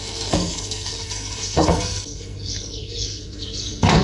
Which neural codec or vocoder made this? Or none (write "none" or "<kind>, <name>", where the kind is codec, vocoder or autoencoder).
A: codec, SNAC